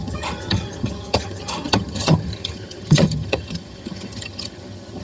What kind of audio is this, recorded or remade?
remade